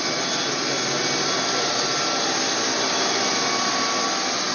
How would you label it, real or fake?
real